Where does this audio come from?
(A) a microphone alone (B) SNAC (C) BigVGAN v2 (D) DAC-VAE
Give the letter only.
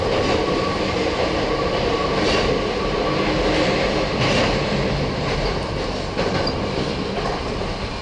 A